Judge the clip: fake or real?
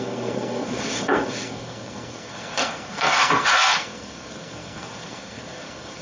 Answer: fake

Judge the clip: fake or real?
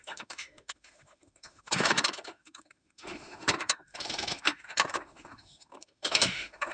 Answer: fake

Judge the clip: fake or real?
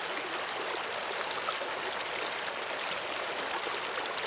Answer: real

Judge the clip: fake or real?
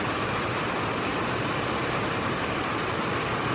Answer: real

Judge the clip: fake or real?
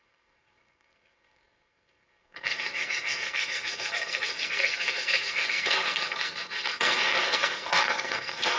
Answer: fake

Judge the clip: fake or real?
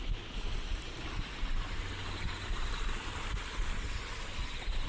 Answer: real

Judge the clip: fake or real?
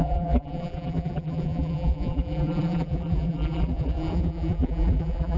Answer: fake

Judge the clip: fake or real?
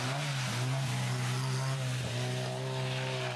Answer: real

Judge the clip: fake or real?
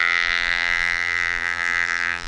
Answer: fake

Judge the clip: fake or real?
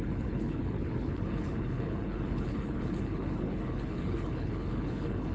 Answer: fake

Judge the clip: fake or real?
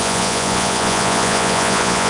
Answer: fake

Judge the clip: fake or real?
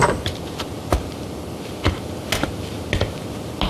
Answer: real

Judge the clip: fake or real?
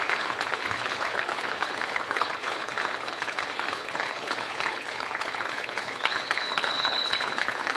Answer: fake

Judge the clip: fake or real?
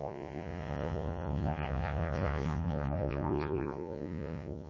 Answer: fake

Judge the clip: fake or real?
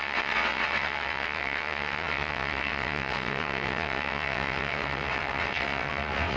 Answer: fake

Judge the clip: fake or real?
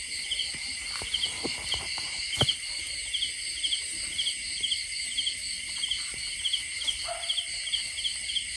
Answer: fake